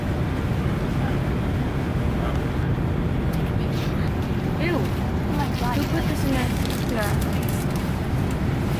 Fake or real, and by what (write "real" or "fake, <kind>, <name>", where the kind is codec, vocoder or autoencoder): real